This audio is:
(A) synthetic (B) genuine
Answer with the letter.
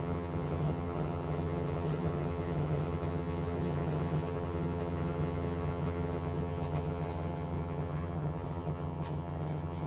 A